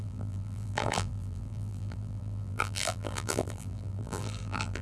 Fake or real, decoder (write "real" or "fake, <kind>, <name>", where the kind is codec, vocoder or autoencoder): fake, vocoder, BigVGAN v2